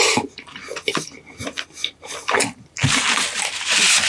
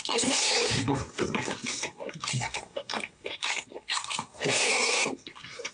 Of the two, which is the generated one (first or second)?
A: second